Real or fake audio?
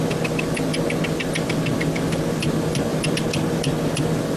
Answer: real